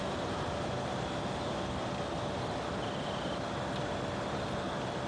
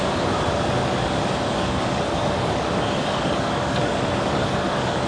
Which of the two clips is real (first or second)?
first